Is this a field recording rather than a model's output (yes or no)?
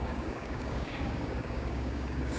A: no